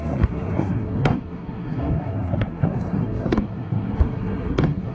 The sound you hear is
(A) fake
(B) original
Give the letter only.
A